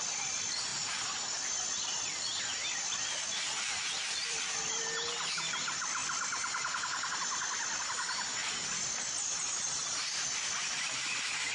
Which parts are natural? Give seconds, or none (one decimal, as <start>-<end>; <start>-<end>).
6.0-7.8; 8.4-10.7